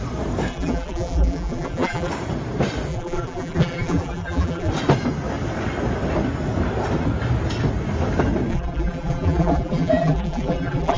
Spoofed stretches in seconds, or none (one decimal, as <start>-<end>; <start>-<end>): 0.5-2.1; 2.9-4.7; 8.5-11.0